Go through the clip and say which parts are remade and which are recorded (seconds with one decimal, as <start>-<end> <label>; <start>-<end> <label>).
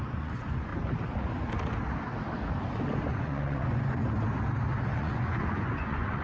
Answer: 0.0-0.7 remade; 0.7-3.0 recorded; 3.0-4.0 remade; 4.0-5.0 recorded; 5.0-6.2 remade